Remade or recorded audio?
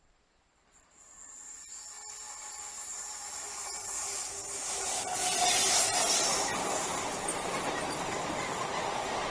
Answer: recorded